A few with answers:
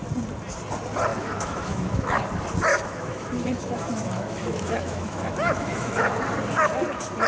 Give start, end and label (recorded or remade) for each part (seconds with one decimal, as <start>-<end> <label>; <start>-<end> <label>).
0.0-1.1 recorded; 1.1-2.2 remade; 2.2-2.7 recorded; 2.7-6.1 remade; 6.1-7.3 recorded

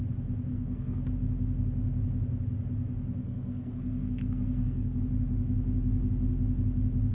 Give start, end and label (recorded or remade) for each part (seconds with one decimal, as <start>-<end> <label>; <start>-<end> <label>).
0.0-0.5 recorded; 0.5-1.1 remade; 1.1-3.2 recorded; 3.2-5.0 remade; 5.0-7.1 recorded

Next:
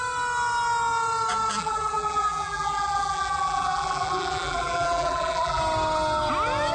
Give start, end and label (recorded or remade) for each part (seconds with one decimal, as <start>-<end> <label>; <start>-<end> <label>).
0.0-1.6 recorded; 1.6-5.6 remade; 5.6-6.7 recorded

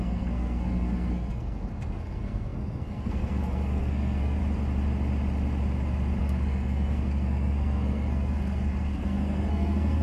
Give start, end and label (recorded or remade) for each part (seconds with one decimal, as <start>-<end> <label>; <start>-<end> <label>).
0.0-4.4 remade; 4.4-6.2 recorded; 6.2-10.0 remade

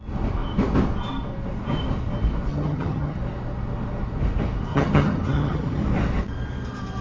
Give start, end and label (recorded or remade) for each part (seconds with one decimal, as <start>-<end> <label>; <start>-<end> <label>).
0.0-2.5 recorded; 2.5-3.2 remade; 3.2-4.7 recorded; 4.7-5.8 remade; 5.8-7.0 recorded

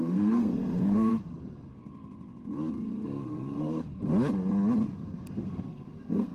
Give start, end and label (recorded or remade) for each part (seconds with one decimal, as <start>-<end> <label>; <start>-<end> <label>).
0.0-1.1 remade; 1.1-2.7 recorded; 2.7-4.1 remade; 4.1-5.3 recorded; 5.3-6.3 remade

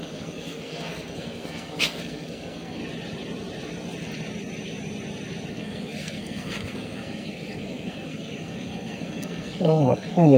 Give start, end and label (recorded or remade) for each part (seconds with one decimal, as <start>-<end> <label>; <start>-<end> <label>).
0.0-2.8 remade; 2.8-5.5 recorded; 5.5-10.4 remade